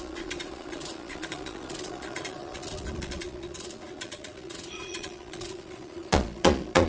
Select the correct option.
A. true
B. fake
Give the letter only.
B